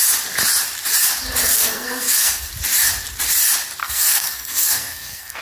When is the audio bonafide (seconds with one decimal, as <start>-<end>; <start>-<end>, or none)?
0.0-1.4; 2.5-3.8